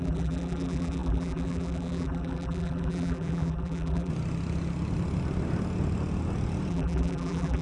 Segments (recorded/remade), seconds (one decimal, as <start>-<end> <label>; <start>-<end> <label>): 0.0-4.1 remade; 4.1-6.7 recorded; 6.7-7.6 remade